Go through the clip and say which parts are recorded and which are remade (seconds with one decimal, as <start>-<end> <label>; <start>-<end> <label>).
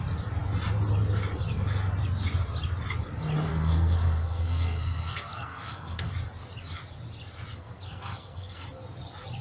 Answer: 0.0-3.5 recorded; 3.5-6.1 remade; 6.1-7.5 recorded; 7.5-8.6 remade; 8.6-9.4 recorded